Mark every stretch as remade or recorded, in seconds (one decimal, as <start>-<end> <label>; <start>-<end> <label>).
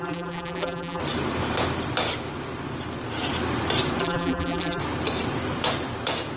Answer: 0.0-1.0 remade; 1.0-4.0 recorded; 4.0-4.8 remade; 4.8-6.4 recorded